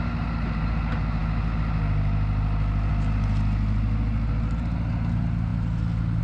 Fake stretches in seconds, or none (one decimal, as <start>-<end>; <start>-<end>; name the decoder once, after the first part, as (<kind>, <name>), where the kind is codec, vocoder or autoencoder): none